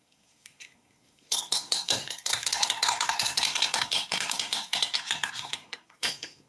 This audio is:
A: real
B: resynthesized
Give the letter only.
B